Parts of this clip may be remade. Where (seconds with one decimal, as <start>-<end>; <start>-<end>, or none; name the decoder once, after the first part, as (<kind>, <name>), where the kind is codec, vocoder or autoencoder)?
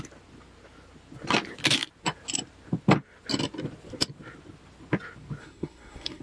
5.4-6.2 (codec, SNAC)